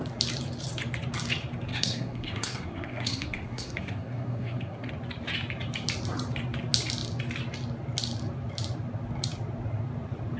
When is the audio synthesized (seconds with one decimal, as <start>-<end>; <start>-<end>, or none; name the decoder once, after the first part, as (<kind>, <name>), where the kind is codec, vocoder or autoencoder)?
1.7-4.9 (codec, SNAC)